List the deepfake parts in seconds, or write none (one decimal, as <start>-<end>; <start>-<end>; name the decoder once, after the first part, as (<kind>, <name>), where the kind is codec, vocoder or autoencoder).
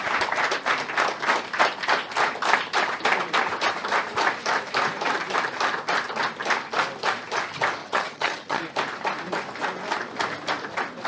7.8-8.6 (vocoder, HiFi-GAN)